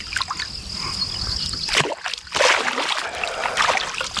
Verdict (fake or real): real